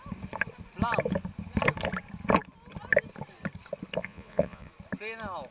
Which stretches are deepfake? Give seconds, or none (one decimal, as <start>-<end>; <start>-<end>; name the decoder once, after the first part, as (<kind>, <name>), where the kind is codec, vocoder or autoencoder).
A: 4.0-4.7 (vocoder, Vocos)